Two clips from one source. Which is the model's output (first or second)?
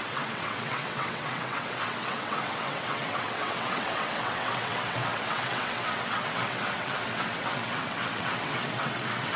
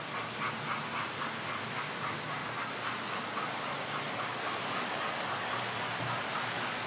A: first